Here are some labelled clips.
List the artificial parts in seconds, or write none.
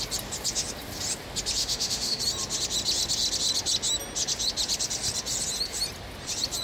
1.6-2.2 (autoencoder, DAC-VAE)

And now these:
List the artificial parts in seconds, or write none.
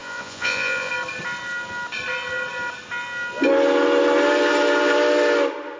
0.0-0.9 (vocoder, Vocos)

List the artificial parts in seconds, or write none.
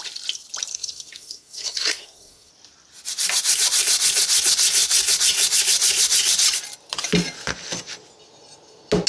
0.7-2.5 (codec, SNAC)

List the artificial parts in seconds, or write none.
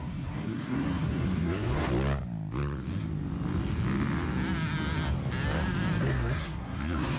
0.0-1.9 (codec, SNAC); 6.0-7.2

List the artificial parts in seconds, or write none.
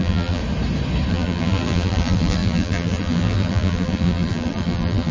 0.0-0.4 (vocoder, BigVGAN v2); 1.1-5.1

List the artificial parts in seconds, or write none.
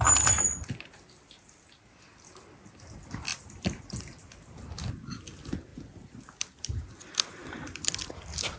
3.3-4.7 (vocoder, BigVGAN v2); 5.7-6.8; 7.4-8.6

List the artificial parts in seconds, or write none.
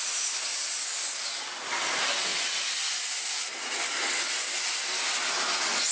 none